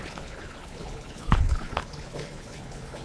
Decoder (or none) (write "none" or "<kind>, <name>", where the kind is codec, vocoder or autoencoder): codec, HILCodec